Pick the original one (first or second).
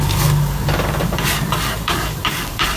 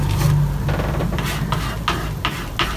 second